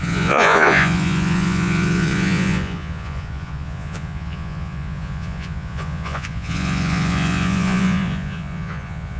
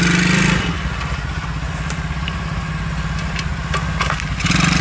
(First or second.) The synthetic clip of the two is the first